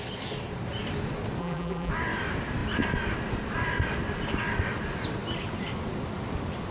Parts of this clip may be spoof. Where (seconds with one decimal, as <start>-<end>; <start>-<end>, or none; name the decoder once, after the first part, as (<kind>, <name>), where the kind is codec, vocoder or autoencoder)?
1.4-1.9 (vocoder, BigVGAN v2)